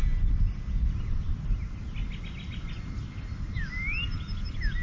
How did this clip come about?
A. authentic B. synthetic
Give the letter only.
A